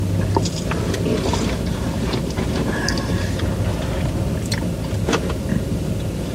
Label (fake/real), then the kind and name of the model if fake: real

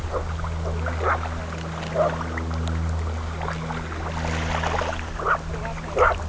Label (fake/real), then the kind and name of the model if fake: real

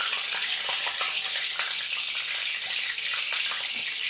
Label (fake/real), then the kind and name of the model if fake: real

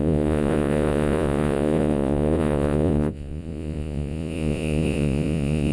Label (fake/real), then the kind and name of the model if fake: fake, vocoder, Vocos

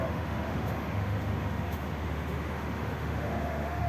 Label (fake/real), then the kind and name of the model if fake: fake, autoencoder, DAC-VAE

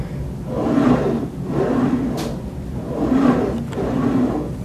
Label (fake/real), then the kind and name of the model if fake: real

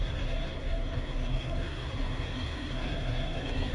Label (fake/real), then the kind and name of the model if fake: fake, codec, SNAC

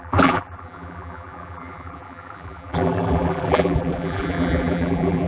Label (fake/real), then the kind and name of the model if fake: fake, vocoder, BigVGAN v2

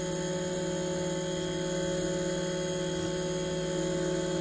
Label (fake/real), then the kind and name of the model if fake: real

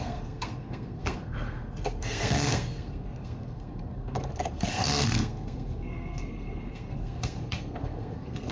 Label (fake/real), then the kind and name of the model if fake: fake, codec, SNAC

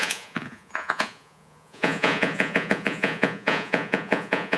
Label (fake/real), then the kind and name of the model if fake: fake, vocoder, Vocos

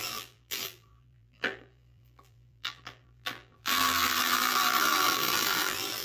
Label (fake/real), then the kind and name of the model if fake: fake, vocoder, BigVGAN v2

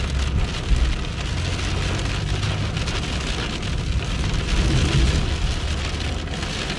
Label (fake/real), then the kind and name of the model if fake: real